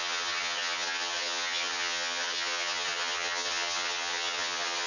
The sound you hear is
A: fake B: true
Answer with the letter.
A